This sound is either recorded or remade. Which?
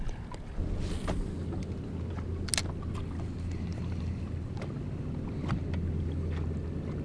recorded